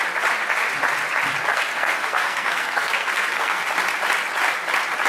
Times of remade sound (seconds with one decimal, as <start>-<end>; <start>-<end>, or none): 1.5-3.6